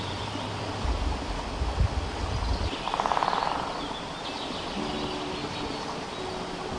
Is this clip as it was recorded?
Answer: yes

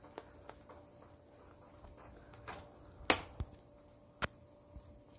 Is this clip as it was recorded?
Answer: yes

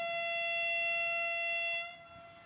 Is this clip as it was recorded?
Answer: yes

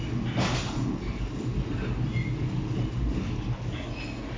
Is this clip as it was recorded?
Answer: yes